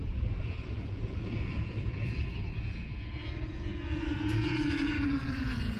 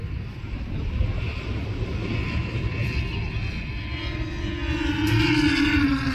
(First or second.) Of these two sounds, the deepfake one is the first